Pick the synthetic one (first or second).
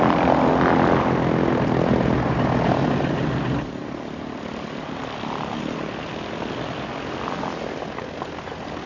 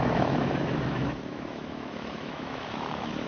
second